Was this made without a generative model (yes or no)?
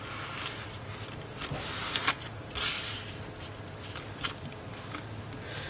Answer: yes